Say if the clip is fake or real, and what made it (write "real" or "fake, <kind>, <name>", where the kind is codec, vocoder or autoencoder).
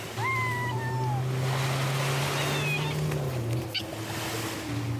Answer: real